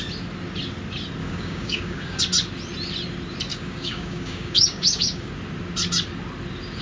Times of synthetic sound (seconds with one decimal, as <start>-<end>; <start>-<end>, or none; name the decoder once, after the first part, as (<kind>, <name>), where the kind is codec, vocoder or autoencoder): 1.2-2.2 (codec, DAC); 3.5-5.3